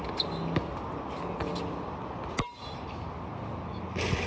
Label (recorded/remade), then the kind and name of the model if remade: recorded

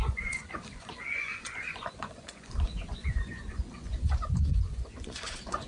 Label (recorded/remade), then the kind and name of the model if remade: remade, vocoder, Vocos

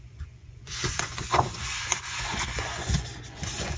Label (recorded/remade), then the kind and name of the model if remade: remade, vocoder, Vocos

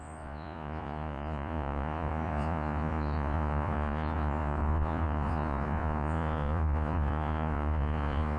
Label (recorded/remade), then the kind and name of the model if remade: remade, vocoder, Vocos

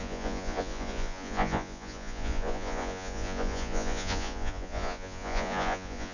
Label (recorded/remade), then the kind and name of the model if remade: remade, vocoder, Vocos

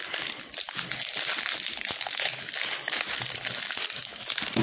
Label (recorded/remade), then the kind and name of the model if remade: recorded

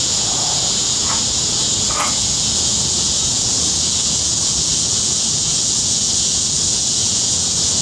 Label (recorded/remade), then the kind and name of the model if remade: remade, vocoder, Vocos